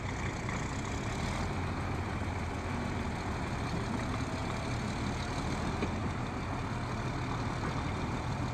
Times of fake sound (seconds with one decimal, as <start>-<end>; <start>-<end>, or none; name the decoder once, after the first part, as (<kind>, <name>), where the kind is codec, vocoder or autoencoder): none